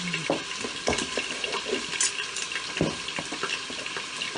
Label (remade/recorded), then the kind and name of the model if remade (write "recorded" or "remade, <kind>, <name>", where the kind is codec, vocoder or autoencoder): recorded